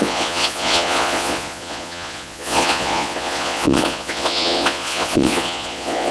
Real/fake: fake